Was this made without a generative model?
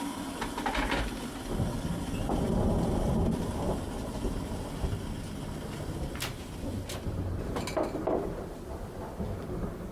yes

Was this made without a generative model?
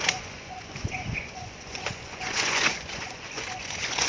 no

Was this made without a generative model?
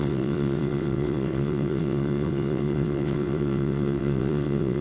no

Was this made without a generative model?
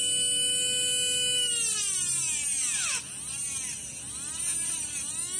yes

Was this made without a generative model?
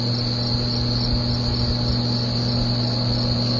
yes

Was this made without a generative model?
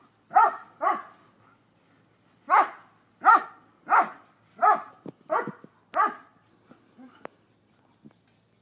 yes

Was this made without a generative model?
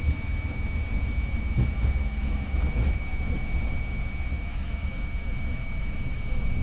no